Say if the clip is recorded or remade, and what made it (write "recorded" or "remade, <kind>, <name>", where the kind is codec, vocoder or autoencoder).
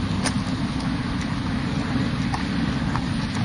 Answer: recorded